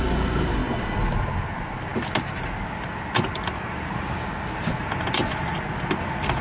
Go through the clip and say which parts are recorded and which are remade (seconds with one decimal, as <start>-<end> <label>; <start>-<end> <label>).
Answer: 0.0-6.4 recorded